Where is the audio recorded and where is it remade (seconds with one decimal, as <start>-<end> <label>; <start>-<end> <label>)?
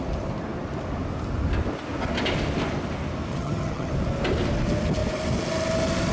0.0-3.3 recorded; 3.3-3.9 remade; 3.9-6.1 recorded